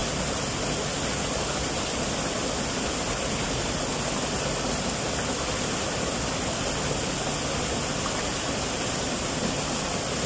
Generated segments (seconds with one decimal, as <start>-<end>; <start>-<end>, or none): none